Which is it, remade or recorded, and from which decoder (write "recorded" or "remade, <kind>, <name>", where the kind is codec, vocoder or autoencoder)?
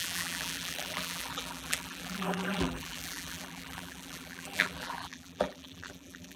remade, vocoder, BigVGAN v2